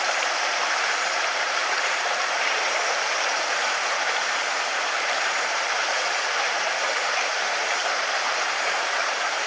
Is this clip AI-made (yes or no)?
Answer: yes